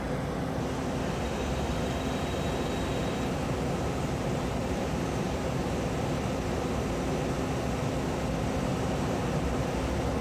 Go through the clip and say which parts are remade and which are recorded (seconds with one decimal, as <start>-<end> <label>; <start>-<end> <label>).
0.0-3.0 recorded; 3.0-5.8 remade; 5.8-8.7 recorded; 8.7-9.5 remade; 9.5-10.2 recorded